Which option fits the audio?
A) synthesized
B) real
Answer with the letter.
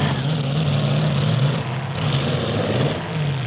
B